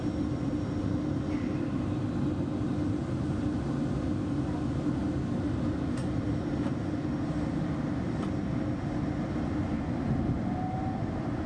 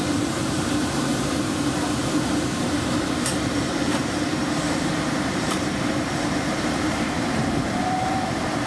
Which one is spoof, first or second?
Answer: second